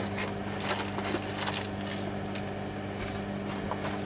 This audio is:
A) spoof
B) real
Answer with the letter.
B